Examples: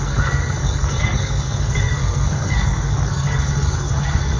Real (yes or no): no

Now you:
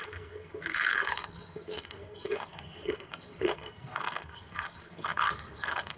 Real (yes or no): no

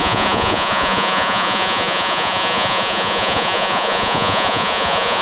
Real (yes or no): no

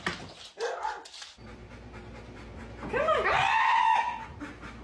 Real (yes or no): yes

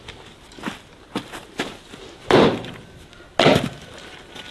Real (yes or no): yes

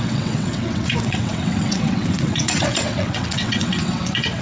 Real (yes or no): no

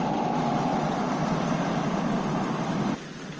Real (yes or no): yes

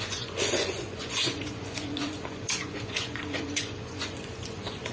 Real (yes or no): no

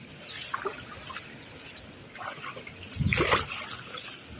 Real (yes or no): yes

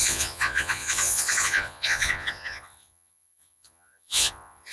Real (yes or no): no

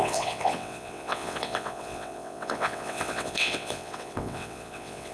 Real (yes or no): no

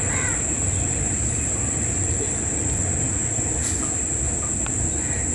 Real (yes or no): yes